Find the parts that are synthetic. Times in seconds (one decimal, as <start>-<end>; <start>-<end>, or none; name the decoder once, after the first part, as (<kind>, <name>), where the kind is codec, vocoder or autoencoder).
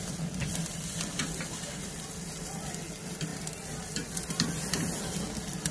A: none